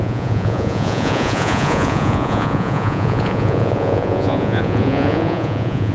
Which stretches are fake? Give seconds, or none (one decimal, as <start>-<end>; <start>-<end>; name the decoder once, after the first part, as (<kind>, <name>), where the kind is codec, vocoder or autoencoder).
0.0-5.9 (vocoder, Vocos)